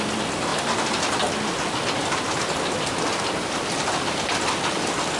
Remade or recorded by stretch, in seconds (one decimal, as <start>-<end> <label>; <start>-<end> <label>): 0.0-0.5 remade; 0.5-2.1 recorded; 2.1-5.2 remade